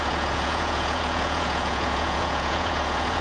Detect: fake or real fake